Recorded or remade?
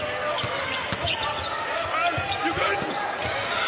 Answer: recorded